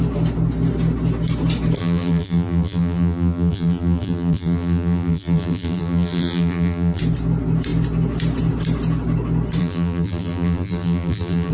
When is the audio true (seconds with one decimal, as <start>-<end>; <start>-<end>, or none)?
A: 0.0-1.8; 7.0-9.6